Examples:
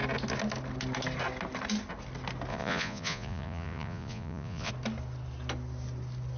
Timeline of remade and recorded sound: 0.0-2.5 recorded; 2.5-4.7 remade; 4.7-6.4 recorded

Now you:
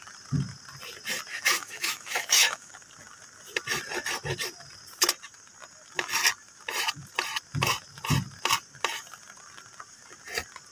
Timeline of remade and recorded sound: 0.0-1.3 recorded; 1.3-2.7 remade; 2.7-10.7 recorded